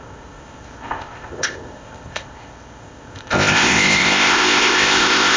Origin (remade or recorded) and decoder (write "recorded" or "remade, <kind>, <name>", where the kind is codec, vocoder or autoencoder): remade, codec, ZipCodec